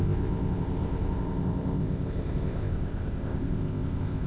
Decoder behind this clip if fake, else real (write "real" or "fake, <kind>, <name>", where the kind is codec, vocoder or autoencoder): fake, codec, ZipCodec